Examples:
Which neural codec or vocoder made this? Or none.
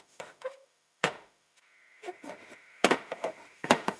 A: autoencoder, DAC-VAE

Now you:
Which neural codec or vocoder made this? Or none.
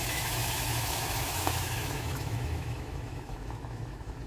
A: autoencoder, DAC-VAE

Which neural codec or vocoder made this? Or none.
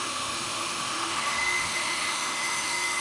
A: autoencoder, DAC-VAE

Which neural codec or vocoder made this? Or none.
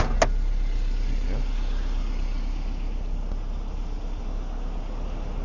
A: none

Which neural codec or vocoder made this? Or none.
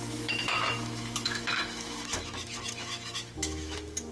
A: autoencoder, DAC-VAE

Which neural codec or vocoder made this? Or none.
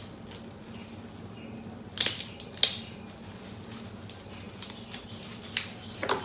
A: none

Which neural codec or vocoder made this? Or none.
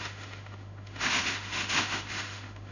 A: autoencoder, DAC-VAE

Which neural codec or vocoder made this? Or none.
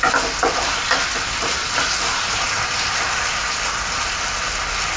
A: none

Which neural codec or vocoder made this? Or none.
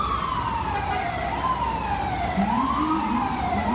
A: none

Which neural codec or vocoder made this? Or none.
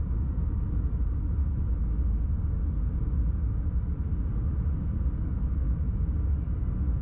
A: none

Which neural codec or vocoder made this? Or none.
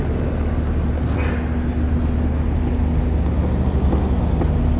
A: none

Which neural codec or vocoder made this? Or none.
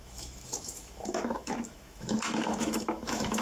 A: autoencoder, DAC-VAE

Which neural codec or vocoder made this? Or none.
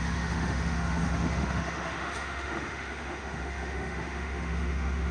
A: autoencoder, DAC-VAE